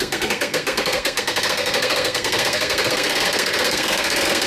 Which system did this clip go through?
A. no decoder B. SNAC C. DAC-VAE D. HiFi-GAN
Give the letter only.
B